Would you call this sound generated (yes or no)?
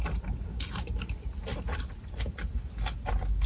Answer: no